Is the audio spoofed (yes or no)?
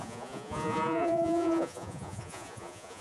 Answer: yes